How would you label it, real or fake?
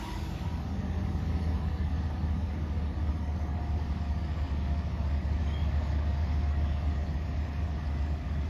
fake